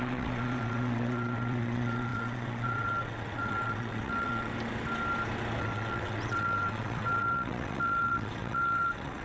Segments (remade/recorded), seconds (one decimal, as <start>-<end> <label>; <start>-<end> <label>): 0.0-4.5 remade; 4.5-5.6 recorded; 5.6-9.2 remade